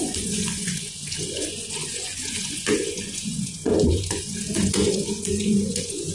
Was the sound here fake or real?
fake